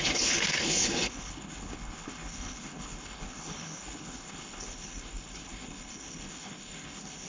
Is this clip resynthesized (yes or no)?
yes